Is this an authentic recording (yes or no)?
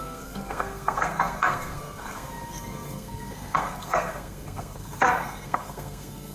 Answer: no